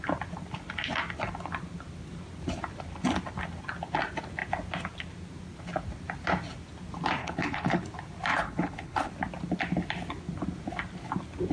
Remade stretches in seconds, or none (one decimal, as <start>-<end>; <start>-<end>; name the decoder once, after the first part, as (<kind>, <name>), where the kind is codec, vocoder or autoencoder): 7.2-7.8 (codec, HILCodec); 8.3-9.1